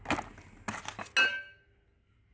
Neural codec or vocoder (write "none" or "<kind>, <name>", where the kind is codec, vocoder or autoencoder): none